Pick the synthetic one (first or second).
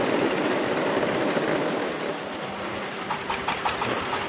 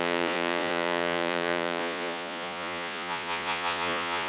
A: second